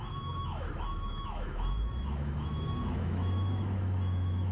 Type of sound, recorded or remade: remade